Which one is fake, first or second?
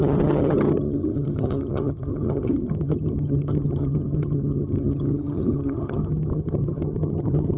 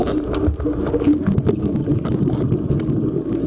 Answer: first